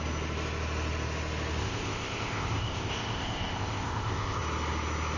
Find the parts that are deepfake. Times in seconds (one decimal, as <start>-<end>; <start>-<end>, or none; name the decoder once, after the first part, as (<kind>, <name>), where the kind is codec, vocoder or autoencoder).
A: 1.6-4.4 (codec, ZipCodec)